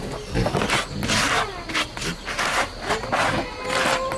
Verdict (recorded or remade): recorded